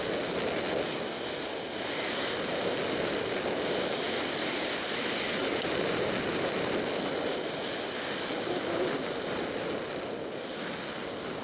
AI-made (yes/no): no